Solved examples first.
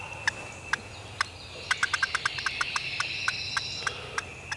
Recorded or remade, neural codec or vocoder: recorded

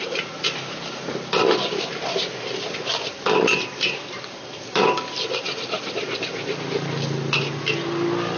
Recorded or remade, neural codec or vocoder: recorded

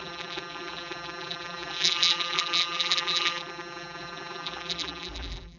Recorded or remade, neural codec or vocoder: remade, vocoder, BigVGAN v2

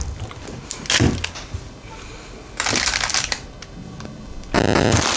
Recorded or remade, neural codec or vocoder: recorded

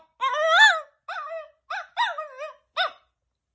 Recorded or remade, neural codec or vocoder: recorded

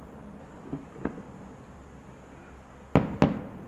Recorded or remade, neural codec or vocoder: recorded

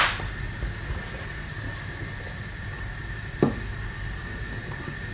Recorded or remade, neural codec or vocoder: recorded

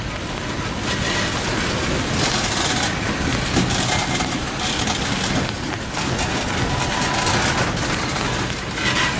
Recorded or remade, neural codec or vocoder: recorded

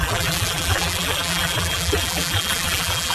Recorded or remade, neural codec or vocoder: remade, vocoder, BigVGAN v2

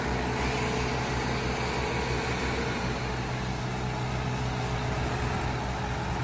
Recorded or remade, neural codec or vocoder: recorded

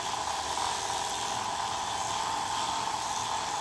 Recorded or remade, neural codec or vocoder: recorded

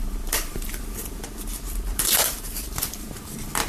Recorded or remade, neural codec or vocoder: remade, vocoder, BigVGAN v2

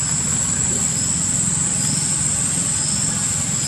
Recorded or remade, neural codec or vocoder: recorded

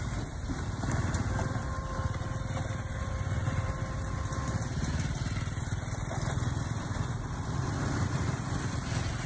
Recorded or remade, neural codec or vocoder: remade, vocoder, BigVGAN v2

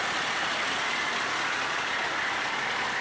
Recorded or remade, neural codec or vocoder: recorded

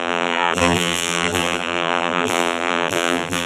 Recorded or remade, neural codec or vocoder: remade, vocoder, BigVGAN v2